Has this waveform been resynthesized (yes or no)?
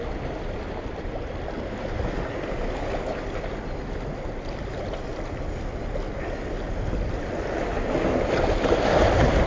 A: no